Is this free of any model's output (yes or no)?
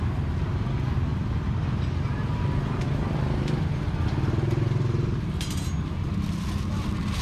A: yes